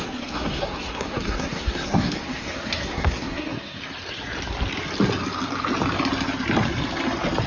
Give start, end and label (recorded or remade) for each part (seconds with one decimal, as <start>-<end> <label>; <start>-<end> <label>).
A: 0.0-3.8 remade; 3.8-7.5 recorded